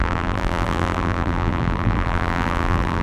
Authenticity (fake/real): fake